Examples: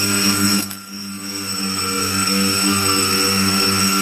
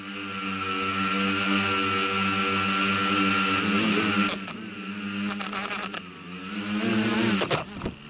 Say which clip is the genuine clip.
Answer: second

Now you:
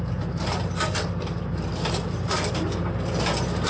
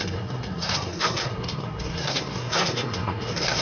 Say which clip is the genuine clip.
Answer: first